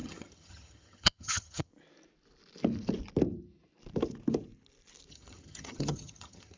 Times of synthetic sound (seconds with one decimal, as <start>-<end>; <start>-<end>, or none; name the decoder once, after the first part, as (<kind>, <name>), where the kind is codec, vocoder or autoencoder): 0.0-1.7 (vocoder, HiFi-GAN); 5.1-6.6